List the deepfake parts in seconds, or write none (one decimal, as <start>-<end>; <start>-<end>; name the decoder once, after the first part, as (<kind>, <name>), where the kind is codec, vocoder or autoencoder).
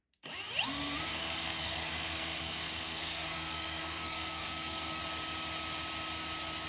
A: 1.1-5.0 (codec, SNAC)